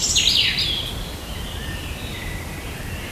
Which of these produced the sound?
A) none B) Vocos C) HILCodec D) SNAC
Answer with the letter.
A